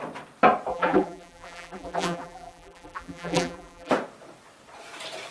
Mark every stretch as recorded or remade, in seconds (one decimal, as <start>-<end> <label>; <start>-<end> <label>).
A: 0.0-0.7 recorded; 0.7-3.9 remade; 3.9-5.3 recorded